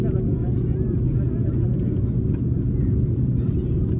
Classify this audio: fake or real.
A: real